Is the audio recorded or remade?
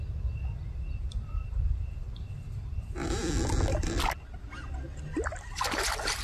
recorded